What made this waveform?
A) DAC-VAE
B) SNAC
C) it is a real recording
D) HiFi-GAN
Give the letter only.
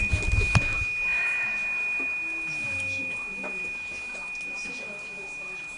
C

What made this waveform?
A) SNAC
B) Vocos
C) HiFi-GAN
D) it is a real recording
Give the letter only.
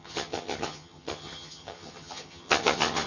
C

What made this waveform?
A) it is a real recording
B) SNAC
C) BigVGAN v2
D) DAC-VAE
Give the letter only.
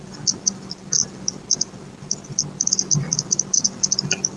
A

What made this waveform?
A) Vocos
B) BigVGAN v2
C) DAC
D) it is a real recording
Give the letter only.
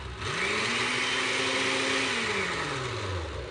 D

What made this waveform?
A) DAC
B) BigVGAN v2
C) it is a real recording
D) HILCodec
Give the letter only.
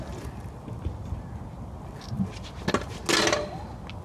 C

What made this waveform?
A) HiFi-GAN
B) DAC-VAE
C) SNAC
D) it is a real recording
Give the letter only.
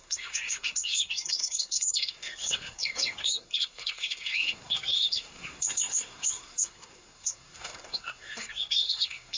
C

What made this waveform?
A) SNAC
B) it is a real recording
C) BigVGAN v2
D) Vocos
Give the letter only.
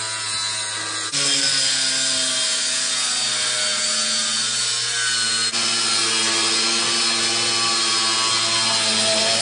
B